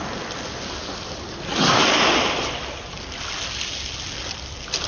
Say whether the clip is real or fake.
real